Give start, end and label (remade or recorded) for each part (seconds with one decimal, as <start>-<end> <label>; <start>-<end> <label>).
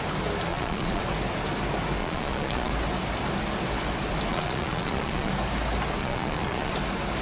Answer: 0.0-0.5 recorded; 0.5-1.0 remade; 1.0-2.0 recorded; 2.0-2.7 remade; 2.7-4.3 recorded; 4.3-5.3 remade; 5.3-6.0 recorded; 6.0-6.7 remade; 6.7-7.2 recorded